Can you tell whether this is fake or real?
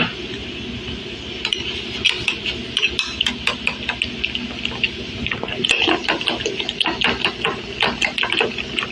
real